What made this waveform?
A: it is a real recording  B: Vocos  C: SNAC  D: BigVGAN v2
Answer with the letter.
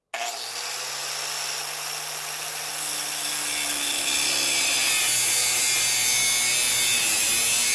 A